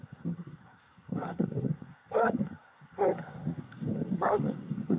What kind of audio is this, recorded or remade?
remade